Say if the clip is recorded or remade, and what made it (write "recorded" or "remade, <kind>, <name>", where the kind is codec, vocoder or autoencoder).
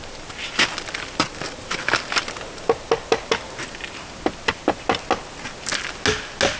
recorded